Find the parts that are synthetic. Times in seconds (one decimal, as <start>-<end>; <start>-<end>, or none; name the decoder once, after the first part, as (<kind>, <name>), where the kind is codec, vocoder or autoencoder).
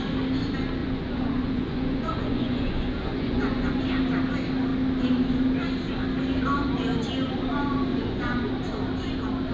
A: 0.8-3.8 (vocoder, Vocos); 7.9-8.5